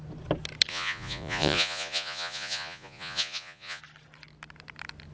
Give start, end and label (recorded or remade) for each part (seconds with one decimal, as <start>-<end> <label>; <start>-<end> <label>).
0.0-0.7 recorded; 0.7-3.8 remade; 3.8-5.1 recorded